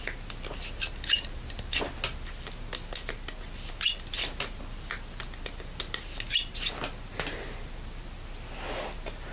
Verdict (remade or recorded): recorded